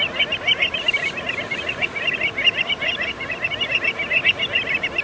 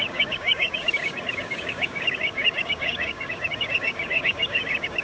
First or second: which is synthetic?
second